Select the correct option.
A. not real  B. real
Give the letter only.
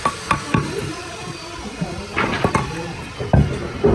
B